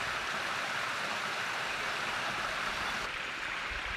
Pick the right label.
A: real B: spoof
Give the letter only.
A